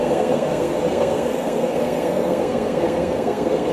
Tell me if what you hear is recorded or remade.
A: remade